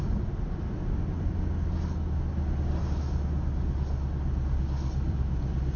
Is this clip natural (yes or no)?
yes